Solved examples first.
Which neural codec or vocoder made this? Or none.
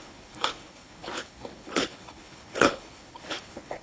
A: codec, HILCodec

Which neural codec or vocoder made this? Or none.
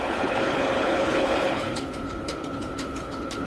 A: codec, HILCodec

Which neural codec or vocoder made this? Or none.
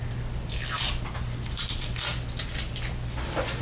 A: none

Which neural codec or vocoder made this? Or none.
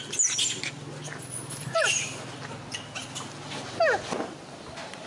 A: none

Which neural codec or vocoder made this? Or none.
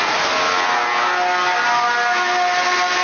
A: none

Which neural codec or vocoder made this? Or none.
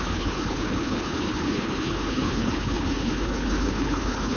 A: codec, HILCodec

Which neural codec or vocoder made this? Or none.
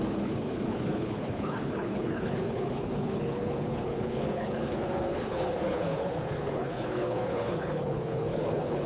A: codec, HILCodec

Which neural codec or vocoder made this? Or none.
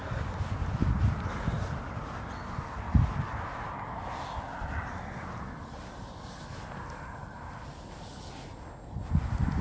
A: none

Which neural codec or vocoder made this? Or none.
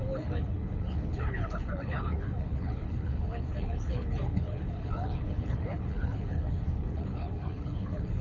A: codec, HILCodec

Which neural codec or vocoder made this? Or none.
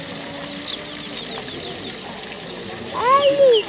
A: none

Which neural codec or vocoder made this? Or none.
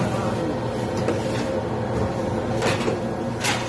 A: none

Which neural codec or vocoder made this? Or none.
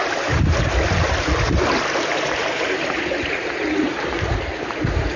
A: none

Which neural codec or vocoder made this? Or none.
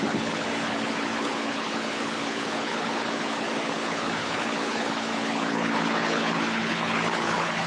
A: codec, HILCodec